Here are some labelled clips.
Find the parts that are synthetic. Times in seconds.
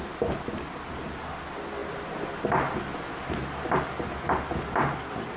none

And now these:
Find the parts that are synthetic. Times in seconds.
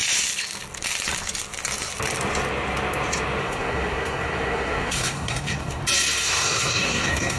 3.4-5.8; 6.2-7.4